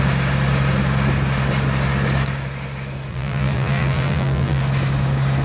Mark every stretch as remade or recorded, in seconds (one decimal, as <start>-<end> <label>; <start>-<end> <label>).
0.0-3.1 recorded; 3.1-4.6 remade; 4.6-5.4 recorded